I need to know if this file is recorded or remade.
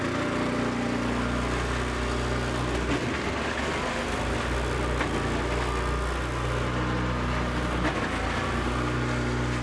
recorded